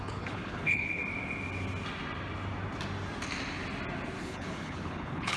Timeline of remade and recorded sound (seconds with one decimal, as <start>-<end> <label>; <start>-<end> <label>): 0.0-1.0 remade; 1.0-4.2 recorded; 4.2-5.4 remade